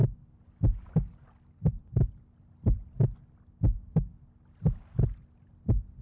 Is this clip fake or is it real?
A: real